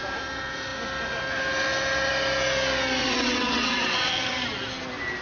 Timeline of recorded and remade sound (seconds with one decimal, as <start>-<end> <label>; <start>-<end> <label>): 0.0-3.0 recorded; 3.0-4.1 remade; 4.1-5.2 recorded